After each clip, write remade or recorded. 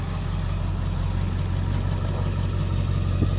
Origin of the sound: recorded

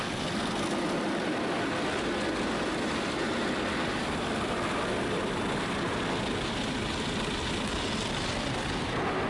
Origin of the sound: recorded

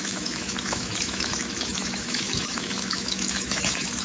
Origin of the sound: remade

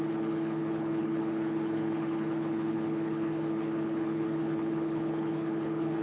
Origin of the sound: remade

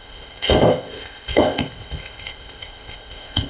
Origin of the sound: remade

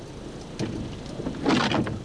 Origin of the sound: recorded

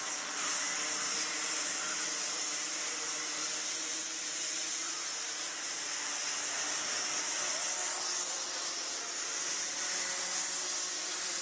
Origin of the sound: recorded